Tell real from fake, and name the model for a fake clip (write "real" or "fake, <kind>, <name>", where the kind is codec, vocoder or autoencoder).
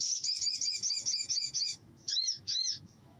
fake, autoencoder, DAC-VAE